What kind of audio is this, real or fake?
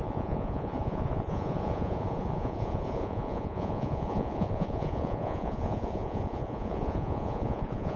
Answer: fake